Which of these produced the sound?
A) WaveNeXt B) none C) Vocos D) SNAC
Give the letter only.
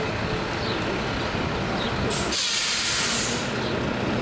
B